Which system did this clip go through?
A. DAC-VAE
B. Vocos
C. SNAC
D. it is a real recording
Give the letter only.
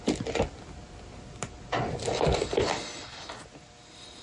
D